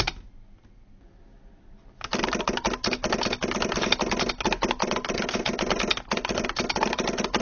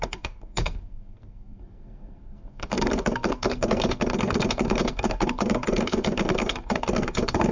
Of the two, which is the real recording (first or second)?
first